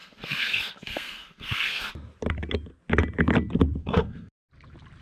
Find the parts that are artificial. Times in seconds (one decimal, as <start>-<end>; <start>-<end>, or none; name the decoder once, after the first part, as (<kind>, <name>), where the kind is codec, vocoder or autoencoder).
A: 0.0-1.9 (codec, SNAC); 3.8-4.3